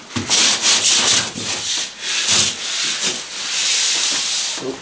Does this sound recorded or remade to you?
recorded